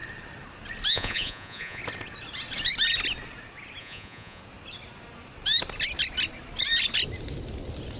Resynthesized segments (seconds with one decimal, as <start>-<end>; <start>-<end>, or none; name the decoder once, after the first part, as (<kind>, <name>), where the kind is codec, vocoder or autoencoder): 0.9-1.8 (vocoder, Vocos); 3.8-4.4